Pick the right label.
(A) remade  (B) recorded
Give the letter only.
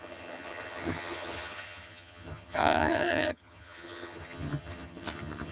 A